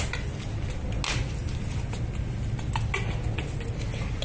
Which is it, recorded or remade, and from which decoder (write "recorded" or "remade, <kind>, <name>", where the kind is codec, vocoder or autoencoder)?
recorded